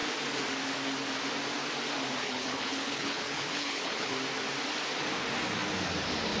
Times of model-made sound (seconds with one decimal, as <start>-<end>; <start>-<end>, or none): 2.2-4.1